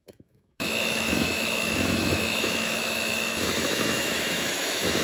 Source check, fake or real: fake